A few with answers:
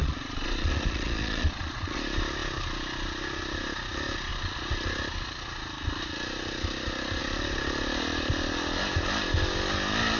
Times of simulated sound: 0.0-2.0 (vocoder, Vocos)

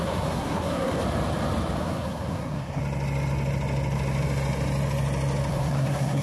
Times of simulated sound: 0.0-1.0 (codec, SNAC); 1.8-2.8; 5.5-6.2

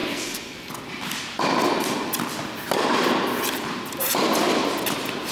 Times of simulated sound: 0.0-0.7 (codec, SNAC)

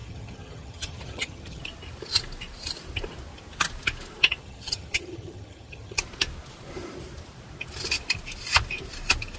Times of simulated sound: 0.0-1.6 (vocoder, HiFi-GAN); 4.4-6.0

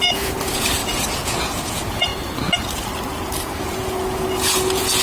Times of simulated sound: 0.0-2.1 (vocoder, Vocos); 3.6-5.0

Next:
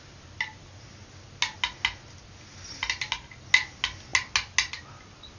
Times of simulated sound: none

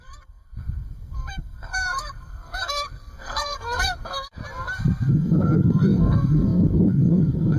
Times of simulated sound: 0.0-4.4 (codec, SNAC); 5.1-7.6